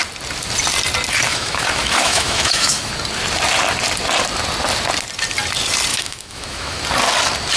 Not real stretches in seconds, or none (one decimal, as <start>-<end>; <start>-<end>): 1.3-2.9; 5.9-6.8